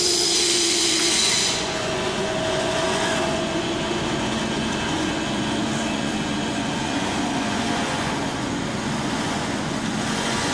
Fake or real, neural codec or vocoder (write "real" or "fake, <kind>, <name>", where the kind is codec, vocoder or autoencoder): fake, vocoder, Vocos